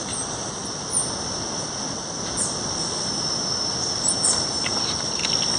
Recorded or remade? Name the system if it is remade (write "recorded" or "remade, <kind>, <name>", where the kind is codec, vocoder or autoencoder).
remade, vocoder, BigVGAN v2